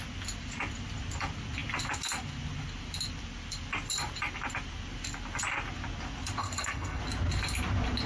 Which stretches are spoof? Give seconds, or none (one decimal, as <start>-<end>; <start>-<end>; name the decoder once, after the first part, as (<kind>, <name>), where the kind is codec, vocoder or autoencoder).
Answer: 6.4-7.0 (codec, SNAC)